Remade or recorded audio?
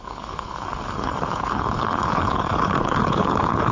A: remade